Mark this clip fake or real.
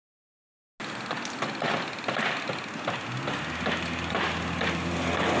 real